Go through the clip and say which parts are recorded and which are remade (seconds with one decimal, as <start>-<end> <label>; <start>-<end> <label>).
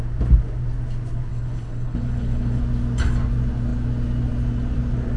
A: 0.0-1.3 recorded; 1.3-2.6 remade; 2.6-5.2 recorded